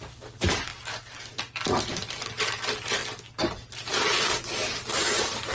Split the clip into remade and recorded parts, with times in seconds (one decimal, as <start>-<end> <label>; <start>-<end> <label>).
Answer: 0.0-0.7 remade; 0.7-2.3 recorded; 2.3-3.0 remade; 3.0-3.5 recorded; 3.5-5.5 remade

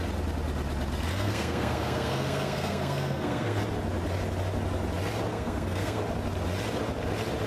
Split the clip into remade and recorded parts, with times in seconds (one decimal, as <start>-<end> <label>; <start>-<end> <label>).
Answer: 0.0-1.1 recorded; 1.1-3.6 remade; 3.6-5.3 recorded; 5.3-6.0 remade; 6.0-7.5 recorded

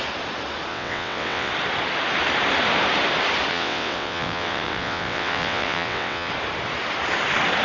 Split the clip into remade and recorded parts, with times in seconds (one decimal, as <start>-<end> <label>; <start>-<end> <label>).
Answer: 0.0-0.7 recorded; 0.7-1.5 remade; 1.5-3.5 recorded; 3.5-6.3 remade; 6.3-7.6 recorded

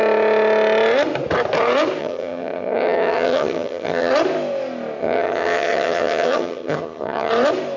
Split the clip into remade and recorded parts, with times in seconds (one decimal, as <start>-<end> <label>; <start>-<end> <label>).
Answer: 0.0-2.0 recorded; 2.0-4.1 remade; 4.1-5.0 recorded; 5.0-7.3 remade; 7.3-7.8 recorded

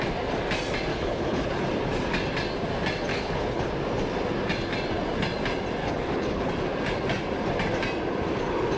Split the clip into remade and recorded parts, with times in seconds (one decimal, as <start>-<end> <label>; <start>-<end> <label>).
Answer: 0.0-0.9 recorded; 0.9-1.7 remade; 1.7-3.1 recorded; 3.1-3.7 remade; 3.7-5.8 recorded; 5.8-6.5 remade; 6.5-8.8 recorded

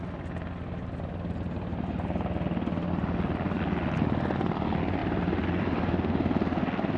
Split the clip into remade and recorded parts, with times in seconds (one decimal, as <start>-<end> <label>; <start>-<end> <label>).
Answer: 0.0-7.0 recorded

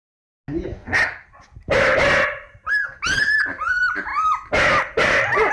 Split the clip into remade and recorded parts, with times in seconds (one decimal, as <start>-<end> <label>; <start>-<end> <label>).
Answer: 0.0-5.5 recorded